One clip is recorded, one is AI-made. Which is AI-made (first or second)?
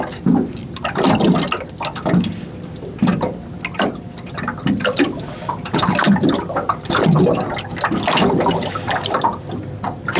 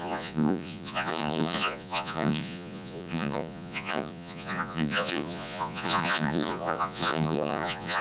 second